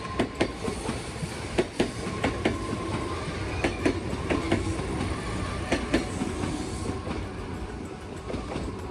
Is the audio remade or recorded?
recorded